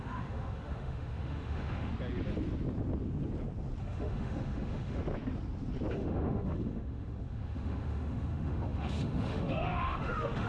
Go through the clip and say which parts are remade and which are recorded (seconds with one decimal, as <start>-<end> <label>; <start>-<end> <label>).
0.0-1.9 remade; 1.9-3.8 recorded; 3.8-5.0 remade; 5.0-5.9 recorded; 5.9-10.5 remade